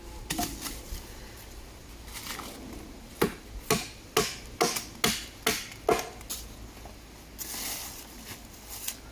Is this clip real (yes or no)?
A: yes